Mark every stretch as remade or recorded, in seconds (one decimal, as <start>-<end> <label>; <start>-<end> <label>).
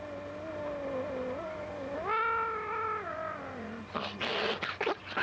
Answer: 0.0-5.2 recorded